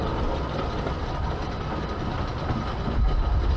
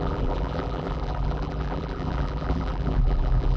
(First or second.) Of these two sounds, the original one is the first